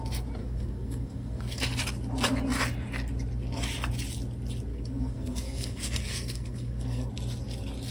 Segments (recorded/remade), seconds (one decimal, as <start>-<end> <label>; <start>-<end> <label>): 0.0-0.4 recorded; 0.4-1.6 remade; 1.6-4.7 recorded; 4.7-7.1 remade; 7.1-7.9 recorded